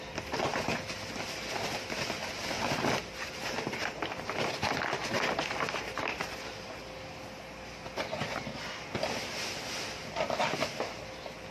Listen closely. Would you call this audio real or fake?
real